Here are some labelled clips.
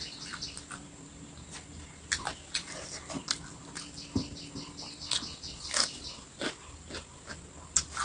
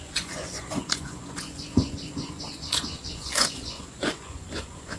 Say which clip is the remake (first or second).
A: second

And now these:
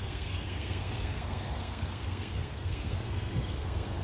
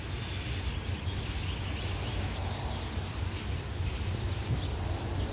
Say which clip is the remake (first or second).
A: first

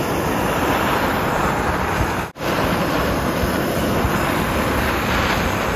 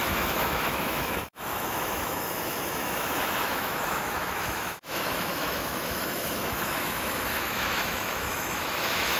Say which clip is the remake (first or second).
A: second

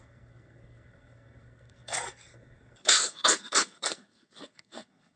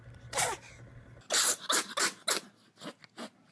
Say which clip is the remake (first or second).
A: first